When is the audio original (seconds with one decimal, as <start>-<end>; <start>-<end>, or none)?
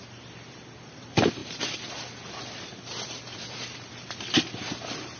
0.0-5.2